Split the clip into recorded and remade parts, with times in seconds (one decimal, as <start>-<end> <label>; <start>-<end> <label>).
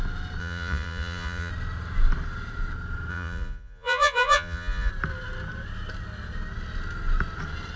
0.0-0.4 recorded; 0.4-1.5 remade; 1.5-3.1 recorded; 3.1-4.9 remade; 4.9-7.8 recorded